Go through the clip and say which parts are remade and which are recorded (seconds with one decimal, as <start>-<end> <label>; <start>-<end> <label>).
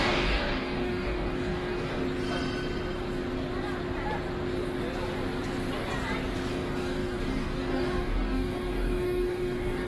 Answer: 0.0-2.0 remade; 2.0-6.5 recorded; 6.5-9.9 remade